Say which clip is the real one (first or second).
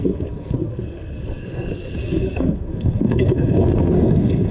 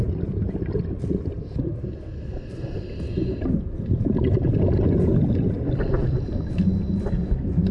second